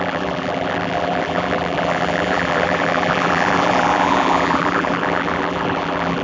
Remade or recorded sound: remade